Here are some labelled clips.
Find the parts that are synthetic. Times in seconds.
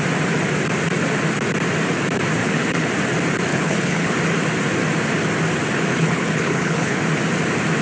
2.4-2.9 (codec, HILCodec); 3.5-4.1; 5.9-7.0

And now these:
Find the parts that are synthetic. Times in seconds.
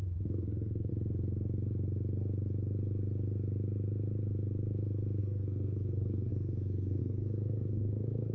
0.0-0.9 (codec, SNAC); 5.2-8.3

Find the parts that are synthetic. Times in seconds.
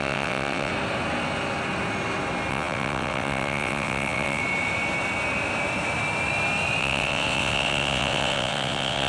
0.0-0.7 (vocoder, WaveNeXt); 2.5-4.4; 6.8-9.1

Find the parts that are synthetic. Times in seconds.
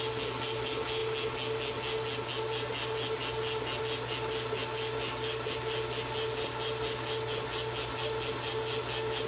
none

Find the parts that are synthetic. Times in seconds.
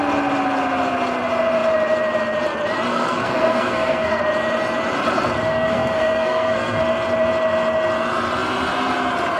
2.9-4.2 (codec, SNAC); 5.5-6.8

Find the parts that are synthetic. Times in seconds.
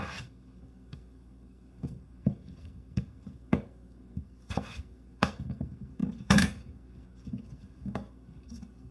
0.0-8.9 (codec, SNAC)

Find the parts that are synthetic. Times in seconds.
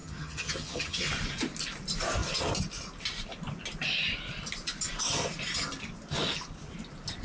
0.0-1.1 (vocoder, HiFi-GAN)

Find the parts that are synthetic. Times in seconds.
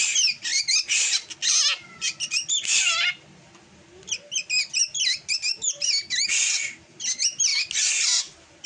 none